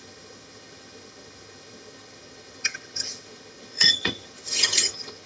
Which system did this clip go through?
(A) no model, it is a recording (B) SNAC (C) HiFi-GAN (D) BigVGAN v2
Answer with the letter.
C